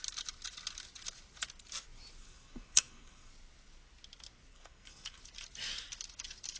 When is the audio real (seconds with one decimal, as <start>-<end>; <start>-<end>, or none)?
0.0-2.2; 3.3-4.5; 5.2-6.6